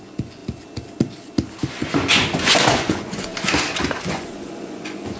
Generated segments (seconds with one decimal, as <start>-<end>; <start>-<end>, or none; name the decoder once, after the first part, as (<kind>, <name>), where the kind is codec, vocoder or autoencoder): 0.0-0.4 (vocoder, Vocos); 1.7-3.3; 4.0-5.2